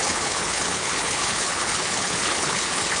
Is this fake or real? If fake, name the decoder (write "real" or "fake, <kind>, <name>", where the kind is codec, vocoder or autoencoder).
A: fake, codec, HILCodec